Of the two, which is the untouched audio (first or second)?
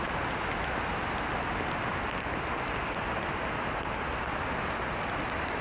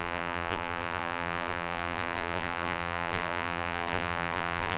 first